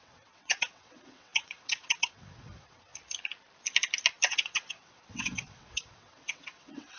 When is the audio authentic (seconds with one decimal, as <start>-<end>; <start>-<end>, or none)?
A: 2.9-4.3